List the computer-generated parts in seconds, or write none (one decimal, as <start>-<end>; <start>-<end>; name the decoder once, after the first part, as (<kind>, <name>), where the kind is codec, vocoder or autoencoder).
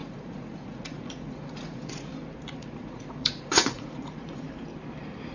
0.0-2.1 (vocoder, Vocos); 2.6-4.4